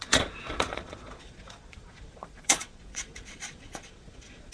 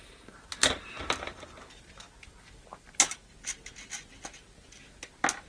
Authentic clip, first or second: second